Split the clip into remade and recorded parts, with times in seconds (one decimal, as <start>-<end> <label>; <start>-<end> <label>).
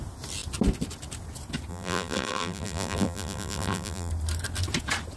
0.0-1.7 recorded; 1.7-4.1 remade; 4.1-5.2 recorded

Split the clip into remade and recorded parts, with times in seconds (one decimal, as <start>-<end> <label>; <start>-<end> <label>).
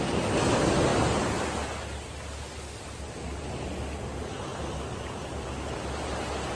0.0-6.5 recorded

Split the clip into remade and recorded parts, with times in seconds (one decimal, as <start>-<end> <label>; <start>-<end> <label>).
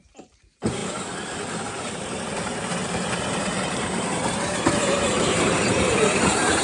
0.0-0.8 remade; 0.8-1.7 recorded; 1.7-6.6 remade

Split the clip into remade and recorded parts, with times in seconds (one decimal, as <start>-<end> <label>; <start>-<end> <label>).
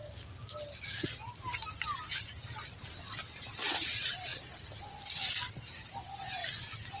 0.0-3.3 recorded; 3.3-4.3 remade; 4.3-5.7 recorded; 5.7-6.4 remade; 6.4-7.0 recorded